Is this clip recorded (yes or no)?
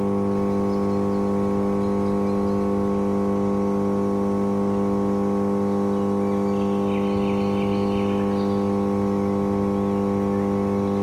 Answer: yes